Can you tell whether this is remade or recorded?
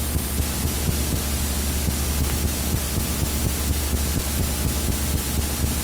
recorded